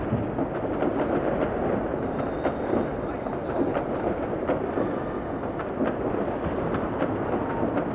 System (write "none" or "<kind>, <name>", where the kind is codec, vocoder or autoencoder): none